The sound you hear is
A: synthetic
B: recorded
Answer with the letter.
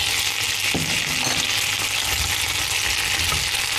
B